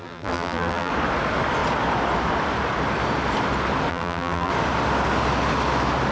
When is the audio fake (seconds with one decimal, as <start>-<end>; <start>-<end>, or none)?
0.0-0.9; 3.9-4.5